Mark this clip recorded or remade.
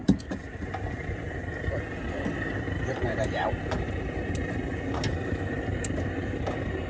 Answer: remade